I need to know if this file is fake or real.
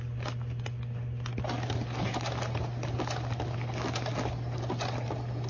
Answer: real